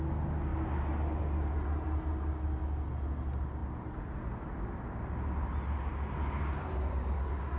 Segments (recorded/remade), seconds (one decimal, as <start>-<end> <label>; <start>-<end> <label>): 0.0-7.6 recorded